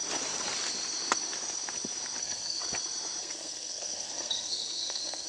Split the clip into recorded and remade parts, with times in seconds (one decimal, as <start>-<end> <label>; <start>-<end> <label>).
0.0-2.2 recorded; 2.2-2.6 remade; 2.6-3.2 recorded; 3.2-5.3 remade